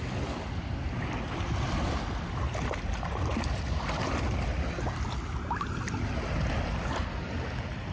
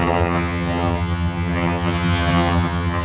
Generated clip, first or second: second